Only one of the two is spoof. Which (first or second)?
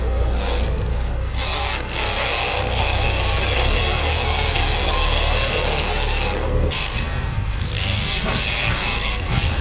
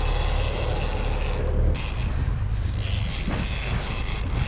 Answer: first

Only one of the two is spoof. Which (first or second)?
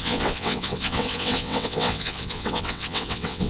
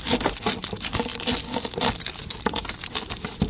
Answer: first